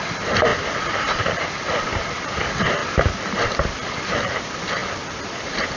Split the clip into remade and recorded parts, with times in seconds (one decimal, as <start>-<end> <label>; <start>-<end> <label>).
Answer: 0.0-0.5 remade; 0.5-1.2 recorded; 1.2-1.9 remade; 1.9-2.4 recorded; 2.4-2.8 remade; 2.8-4.1 recorded; 4.1-5.8 remade